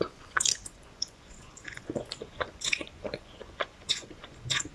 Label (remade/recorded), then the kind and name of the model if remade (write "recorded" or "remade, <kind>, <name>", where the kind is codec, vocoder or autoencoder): remade, vocoder, Vocos